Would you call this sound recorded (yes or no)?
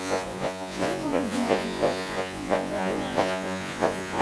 no